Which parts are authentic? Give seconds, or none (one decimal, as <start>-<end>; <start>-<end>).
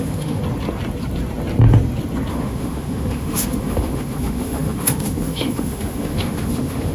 0.4-2.3